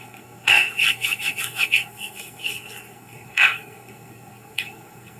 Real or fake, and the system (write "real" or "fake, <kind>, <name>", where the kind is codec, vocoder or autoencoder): fake, codec, SNAC